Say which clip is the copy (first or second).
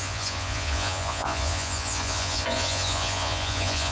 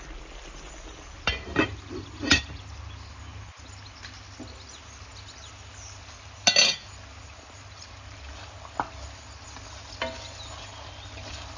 first